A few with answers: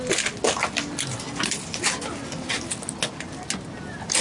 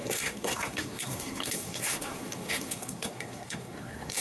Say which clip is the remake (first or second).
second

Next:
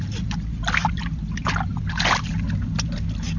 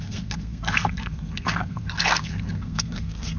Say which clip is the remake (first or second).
second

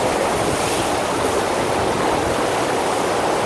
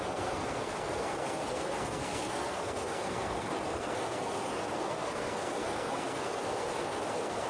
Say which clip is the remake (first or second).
second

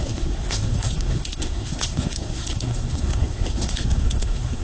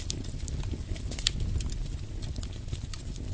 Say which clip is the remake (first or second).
first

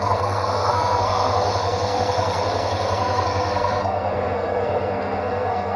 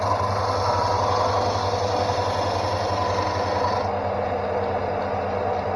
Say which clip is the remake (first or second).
first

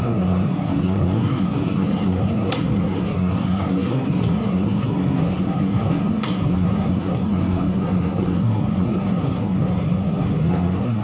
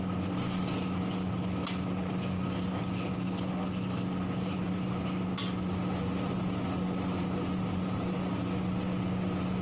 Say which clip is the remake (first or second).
first